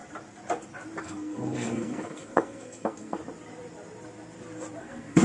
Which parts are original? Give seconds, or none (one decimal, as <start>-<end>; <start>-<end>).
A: 0.0-1.0; 3.2-4.8